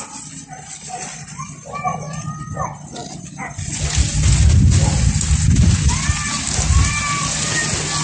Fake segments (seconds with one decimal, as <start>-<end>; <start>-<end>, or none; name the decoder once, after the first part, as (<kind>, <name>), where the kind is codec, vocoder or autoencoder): none